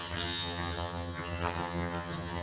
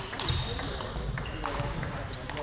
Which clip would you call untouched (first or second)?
second